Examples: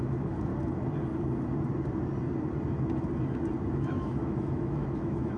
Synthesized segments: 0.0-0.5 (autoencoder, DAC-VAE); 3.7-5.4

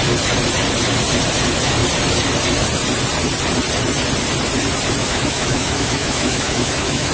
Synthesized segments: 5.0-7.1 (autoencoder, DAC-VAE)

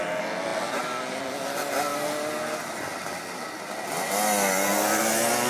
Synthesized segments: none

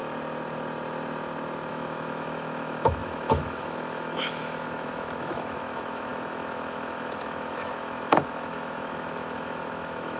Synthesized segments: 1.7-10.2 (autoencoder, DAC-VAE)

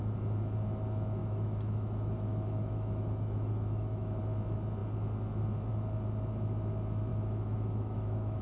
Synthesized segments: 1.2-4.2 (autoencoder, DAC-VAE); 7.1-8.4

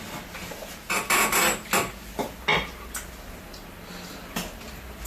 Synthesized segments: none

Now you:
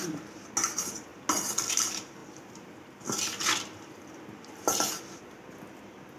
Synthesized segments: none

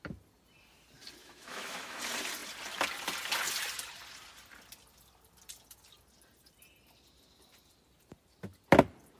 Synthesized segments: 1.2-2.0 (autoencoder, DAC-VAE)